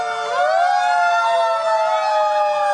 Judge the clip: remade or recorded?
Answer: recorded